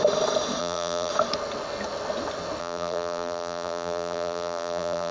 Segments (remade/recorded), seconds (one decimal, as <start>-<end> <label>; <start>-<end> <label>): 0.0-0.6 recorded; 0.6-1.1 remade; 1.1-2.6 recorded; 2.6-5.1 remade